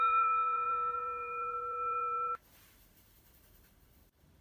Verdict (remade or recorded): remade